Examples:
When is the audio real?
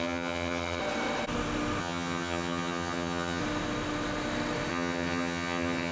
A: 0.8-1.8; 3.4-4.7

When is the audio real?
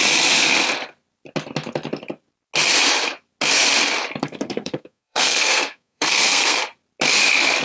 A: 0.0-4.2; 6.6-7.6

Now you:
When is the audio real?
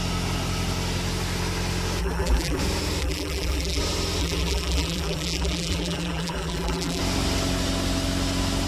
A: 0.0-2.0; 2.6-3.0; 3.8-4.2; 7.0-8.7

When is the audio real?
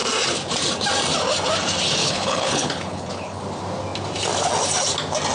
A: 0.0-2.0; 3.4-5.3